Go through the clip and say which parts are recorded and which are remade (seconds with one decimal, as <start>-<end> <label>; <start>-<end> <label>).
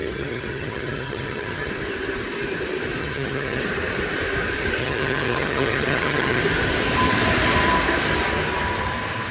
0.0-1.7 remade; 1.7-3.0 recorded; 3.0-3.6 remade; 3.6-4.8 recorded; 4.8-6.4 remade; 6.4-9.3 recorded